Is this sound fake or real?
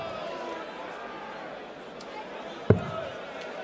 real